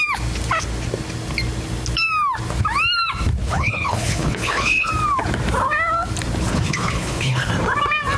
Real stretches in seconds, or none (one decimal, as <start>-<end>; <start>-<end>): 0.0-3.4; 4.9-6.5; 7.5-8.2

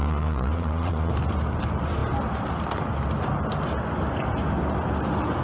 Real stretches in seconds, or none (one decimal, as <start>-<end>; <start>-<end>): 1.1-5.4

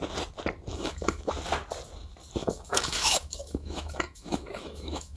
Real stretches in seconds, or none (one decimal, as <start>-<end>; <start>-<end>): 0.0-0.7; 1.3-2.4

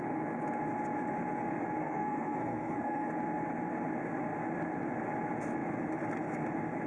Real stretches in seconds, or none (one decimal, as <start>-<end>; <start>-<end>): 0.0-1.8; 3.1-6.9

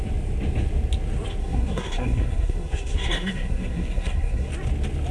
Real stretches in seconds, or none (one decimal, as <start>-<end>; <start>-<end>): 0.0-1.4; 4.5-5.1